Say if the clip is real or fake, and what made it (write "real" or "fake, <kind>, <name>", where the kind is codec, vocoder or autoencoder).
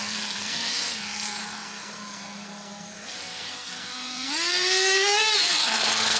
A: fake, codec, SNAC